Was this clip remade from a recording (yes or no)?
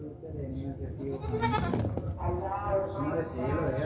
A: no